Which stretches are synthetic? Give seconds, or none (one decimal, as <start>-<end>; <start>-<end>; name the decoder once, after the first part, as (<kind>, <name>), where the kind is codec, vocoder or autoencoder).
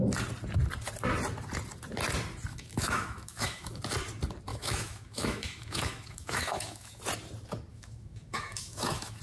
2.5-3.8 (autoencoder, DAC-VAE); 4.5-7.0; 7.7-9.2